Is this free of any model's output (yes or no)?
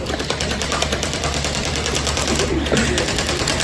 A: no